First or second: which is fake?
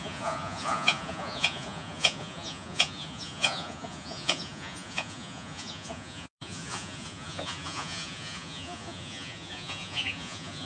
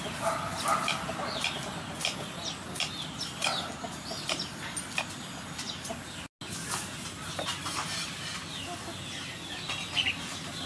first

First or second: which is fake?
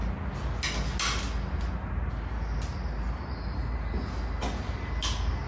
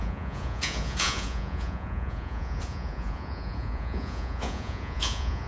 second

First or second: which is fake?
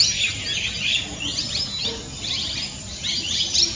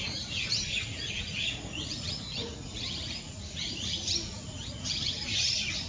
second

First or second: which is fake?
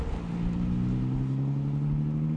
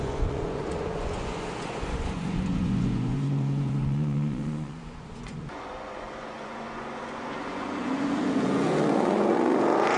second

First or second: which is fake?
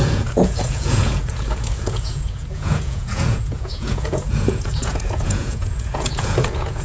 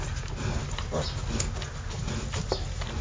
first